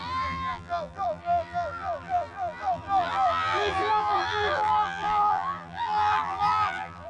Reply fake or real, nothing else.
fake